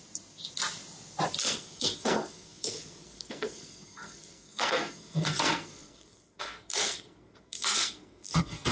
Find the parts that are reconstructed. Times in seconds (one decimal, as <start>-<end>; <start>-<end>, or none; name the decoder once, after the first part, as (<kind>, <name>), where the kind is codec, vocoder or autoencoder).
1.4-8.7 (codec, SNAC)